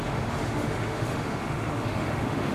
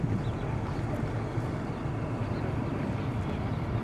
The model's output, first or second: first